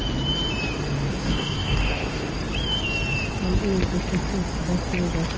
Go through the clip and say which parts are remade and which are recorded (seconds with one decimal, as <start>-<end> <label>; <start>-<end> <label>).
0.0-1.1 recorded; 1.1-2.3 remade; 2.3-5.4 recorded

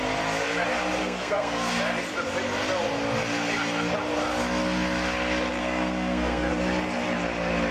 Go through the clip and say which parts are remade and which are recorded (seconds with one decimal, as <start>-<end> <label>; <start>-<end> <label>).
0.0-1.0 recorded; 1.0-1.7 remade; 1.7-5.6 recorded; 5.6-6.5 remade; 6.5-7.7 recorded

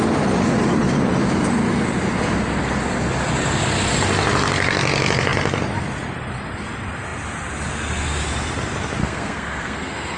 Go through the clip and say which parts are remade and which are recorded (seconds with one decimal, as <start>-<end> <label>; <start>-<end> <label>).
0.0-9.0 recorded; 9.0-10.2 remade

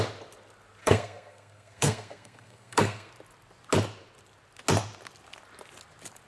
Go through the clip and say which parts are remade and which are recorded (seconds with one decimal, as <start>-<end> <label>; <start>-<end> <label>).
0.0-0.8 recorded; 0.8-3.1 remade; 3.1-6.3 recorded

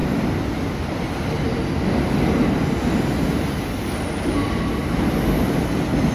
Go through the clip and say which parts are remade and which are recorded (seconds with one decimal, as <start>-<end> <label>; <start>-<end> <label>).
0.0-6.1 recorded

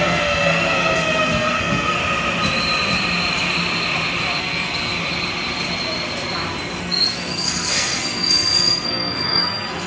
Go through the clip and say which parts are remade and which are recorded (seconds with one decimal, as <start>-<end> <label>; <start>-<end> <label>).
0.0-2.0 remade; 2.0-4.4 recorded; 4.4-4.9 remade; 4.9-6.8 recorded; 6.8-9.9 remade

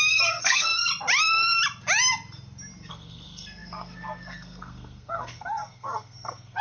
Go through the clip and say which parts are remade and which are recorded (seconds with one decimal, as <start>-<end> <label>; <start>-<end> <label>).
0.0-0.9 remade; 0.9-2.9 recorded; 2.9-6.6 remade